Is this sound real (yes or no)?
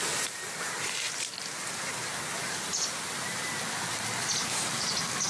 yes